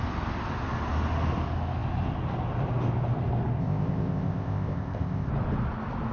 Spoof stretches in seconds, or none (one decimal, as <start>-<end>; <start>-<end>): 3.6-5.3